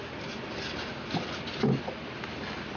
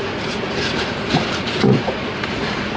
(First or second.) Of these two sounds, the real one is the first